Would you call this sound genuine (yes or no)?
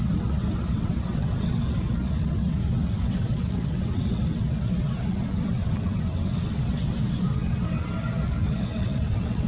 no